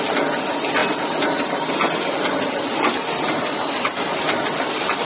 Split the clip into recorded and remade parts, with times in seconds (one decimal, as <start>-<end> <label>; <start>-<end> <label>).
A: 0.0-5.0 recorded

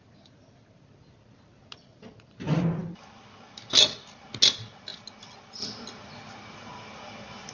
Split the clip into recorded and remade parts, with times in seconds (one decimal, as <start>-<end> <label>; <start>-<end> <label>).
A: 0.0-7.5 recorded

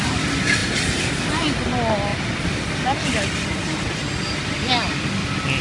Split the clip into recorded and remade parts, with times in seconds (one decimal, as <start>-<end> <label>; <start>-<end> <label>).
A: 0.0-0.6 recorded; 0.6-1.1 remade; 1.1-5.6 recorded

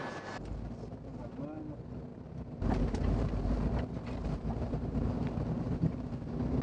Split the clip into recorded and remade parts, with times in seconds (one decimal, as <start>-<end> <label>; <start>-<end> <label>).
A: 0.0-2.1 recorded; 2.1-6.1 remade; 6.1-6.6 recorded